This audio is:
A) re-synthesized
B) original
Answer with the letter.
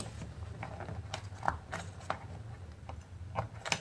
B